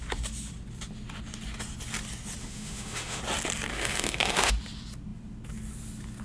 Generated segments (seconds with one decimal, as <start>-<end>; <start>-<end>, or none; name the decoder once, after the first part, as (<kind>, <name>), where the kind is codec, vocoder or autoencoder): 2.4-3.2 (autoencoder, DAC-VAE); 3.7-4.5